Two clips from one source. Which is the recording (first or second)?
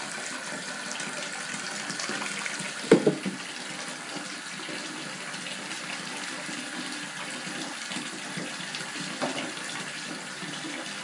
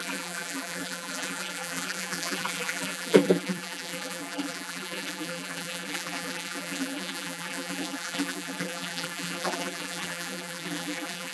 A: first